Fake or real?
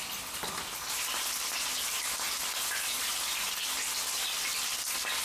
real